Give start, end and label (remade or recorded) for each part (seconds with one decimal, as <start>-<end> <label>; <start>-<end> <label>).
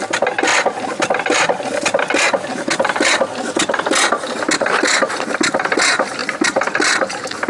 0.0-7.5 recorded